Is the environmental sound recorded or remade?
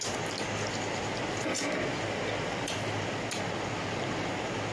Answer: recorded